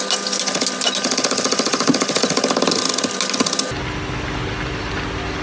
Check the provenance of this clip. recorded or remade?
recorded